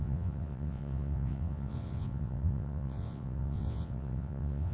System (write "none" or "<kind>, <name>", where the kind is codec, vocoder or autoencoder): vocoder, WaveNeXt